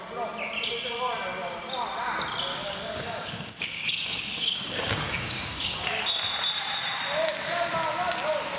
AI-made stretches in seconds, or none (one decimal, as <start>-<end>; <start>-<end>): 2.5-6.0